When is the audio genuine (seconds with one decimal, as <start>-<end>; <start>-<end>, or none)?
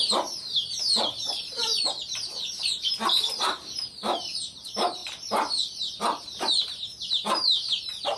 1.7-2.4; 5.0-6.6